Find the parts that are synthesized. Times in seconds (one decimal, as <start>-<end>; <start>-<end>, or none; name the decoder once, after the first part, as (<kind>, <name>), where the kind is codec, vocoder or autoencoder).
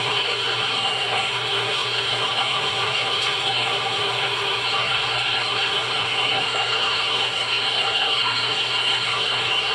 0.0-9.7 (codec, SNAC)